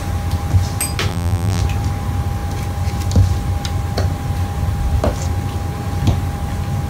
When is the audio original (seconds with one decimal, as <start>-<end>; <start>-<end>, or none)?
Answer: 0.0-1.1; 1.6-6.9